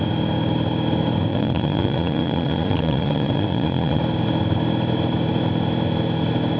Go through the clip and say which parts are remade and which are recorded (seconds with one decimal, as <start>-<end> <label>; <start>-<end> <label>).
0.0-1.3 recorded; 1.3-4.0 remade; 4.0-6.6 recorded